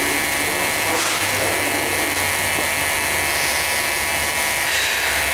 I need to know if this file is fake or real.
real